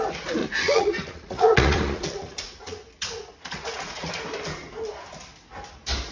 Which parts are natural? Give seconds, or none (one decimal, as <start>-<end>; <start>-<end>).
0.0-0.4; 4.1-6.1